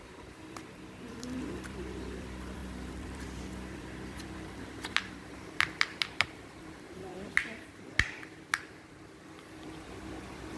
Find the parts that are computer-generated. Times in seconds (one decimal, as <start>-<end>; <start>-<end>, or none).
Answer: 0.0-7.1; 8.9-10.6